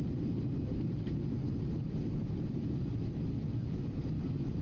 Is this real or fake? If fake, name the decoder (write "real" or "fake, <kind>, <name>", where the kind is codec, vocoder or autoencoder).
real